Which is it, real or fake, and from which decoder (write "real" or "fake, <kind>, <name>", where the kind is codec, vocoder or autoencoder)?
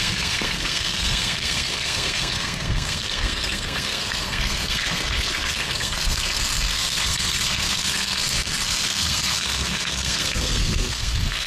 fake, codec, SNAC